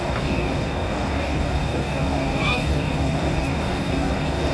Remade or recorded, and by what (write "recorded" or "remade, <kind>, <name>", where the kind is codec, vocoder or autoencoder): remade, codec, DAC